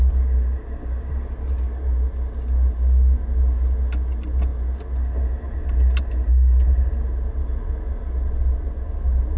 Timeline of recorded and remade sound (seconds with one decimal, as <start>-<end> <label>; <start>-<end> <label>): 0.0-9.4 recorded